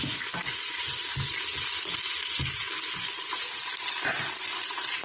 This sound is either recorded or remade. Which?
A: recorded